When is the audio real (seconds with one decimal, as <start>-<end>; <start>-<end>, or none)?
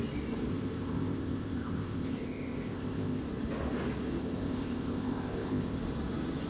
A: 0.0-0.5; 3.2-4.2; 5.8-6.5